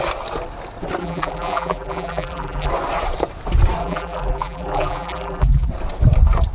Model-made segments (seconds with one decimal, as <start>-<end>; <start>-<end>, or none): 1.0-2.7; 3.8-5.7